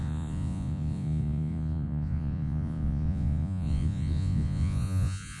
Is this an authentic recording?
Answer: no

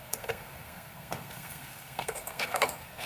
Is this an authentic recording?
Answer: no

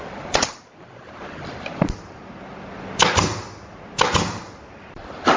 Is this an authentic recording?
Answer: yes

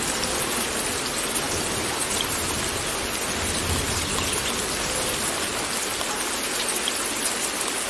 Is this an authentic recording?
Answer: yes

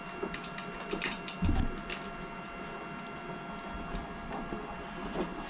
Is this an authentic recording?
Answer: yes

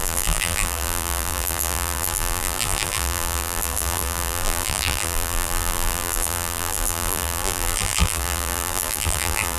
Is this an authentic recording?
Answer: no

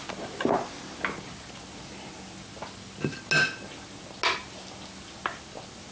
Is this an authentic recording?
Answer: yes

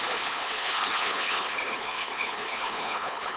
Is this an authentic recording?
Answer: no